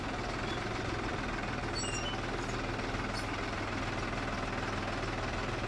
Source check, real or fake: real